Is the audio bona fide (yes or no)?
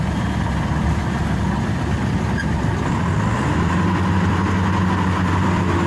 yes